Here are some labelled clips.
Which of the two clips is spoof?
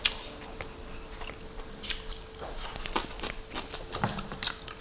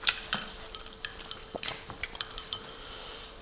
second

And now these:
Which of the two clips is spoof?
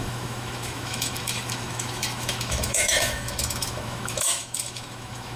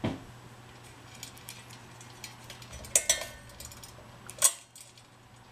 first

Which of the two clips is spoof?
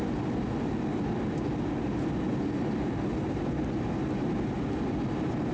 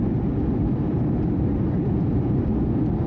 second